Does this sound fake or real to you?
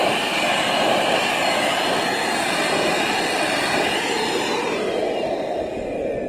real